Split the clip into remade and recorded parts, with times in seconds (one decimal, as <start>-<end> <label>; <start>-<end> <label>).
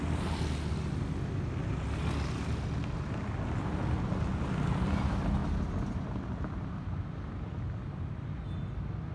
0.0-9.1 recorded